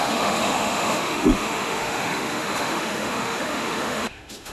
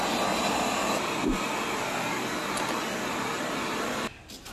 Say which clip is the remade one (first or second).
first